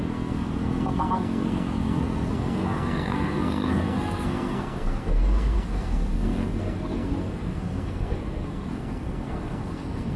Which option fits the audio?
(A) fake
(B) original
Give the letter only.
A